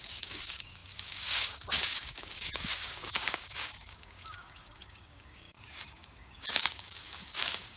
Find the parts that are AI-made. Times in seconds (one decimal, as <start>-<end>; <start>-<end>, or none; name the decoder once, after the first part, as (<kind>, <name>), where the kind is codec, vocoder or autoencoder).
0.0-7.8 (codec, DAC)